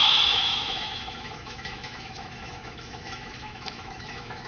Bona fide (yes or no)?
no